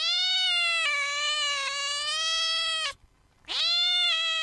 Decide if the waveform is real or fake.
real